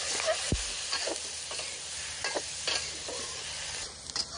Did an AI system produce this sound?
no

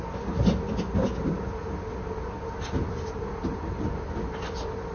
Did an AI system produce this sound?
no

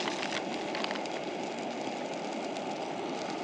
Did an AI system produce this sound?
no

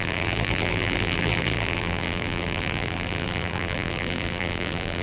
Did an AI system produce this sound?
yes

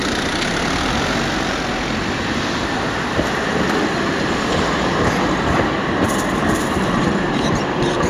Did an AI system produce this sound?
yes